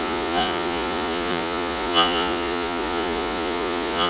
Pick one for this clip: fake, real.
fake